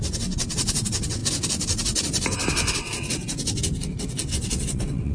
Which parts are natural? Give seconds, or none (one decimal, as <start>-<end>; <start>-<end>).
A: 1.2-4.3